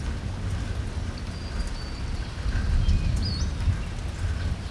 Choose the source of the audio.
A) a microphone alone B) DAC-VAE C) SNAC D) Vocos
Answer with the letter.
A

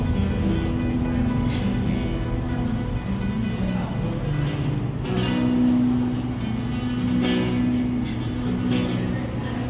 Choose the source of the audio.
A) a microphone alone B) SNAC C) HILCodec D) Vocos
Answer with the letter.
A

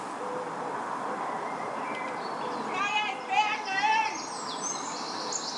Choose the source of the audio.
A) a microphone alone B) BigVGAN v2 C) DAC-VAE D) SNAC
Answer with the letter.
A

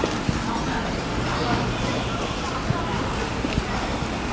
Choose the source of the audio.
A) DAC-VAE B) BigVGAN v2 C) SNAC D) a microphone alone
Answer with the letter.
D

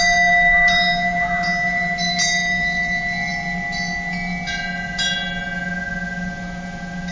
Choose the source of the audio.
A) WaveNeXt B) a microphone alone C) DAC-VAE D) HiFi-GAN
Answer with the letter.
B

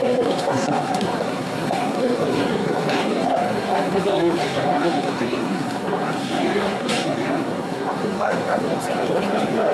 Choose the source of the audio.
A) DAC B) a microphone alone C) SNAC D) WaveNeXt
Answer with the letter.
C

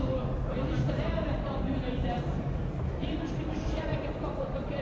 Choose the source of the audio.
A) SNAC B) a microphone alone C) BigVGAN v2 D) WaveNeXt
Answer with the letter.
C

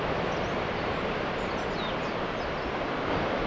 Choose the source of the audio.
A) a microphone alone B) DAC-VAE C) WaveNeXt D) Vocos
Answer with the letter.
A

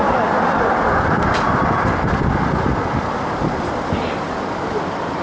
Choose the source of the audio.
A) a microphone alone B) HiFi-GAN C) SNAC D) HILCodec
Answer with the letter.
A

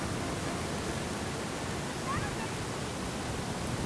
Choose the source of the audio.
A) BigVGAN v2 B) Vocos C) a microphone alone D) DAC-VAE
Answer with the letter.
C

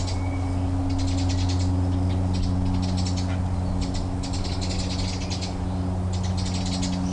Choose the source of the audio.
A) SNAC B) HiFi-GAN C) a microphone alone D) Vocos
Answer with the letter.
C